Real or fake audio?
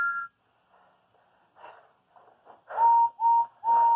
real